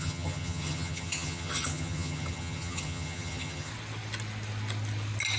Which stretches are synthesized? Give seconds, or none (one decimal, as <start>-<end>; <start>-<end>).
0.0-3.7